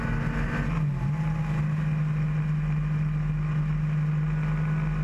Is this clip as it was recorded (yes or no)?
yes